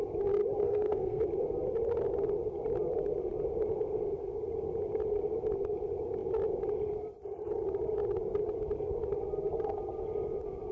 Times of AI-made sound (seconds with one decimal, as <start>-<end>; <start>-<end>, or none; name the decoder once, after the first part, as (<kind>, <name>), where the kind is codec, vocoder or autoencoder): 0.6-1.2 (codec, SNAC)

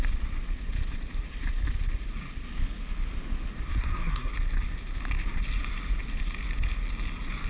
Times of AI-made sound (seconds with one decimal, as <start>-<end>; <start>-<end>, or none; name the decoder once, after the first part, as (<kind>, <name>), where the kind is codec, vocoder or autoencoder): 3.7-4.3 (codec, SNAC)

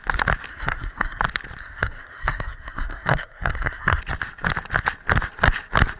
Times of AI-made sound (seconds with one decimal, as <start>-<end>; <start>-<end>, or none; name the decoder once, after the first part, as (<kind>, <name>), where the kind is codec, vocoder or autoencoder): 0.5-1.2 (codec, SNAC); 1.6-4.0

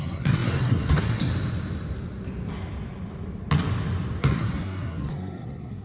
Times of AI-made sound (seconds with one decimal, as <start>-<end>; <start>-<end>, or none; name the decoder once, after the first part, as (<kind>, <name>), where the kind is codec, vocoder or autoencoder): 0.0-1.3 (codec, SNAC); 4.2-5.8

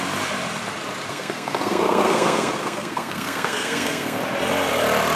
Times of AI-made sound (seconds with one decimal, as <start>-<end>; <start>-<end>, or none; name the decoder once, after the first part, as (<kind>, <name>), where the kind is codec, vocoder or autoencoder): 1.1-4.2 (codec, SNAC)